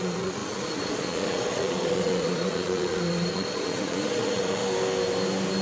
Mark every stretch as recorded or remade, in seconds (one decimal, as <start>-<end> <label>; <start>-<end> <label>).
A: 0.0-4.6 remade; 4.6-5.6 recorded